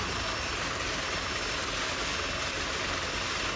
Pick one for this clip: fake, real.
real